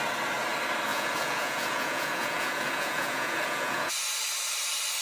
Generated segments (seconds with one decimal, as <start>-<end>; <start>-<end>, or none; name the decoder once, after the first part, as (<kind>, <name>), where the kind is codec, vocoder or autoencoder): 0.9-3.9 (vocoder, Vocos)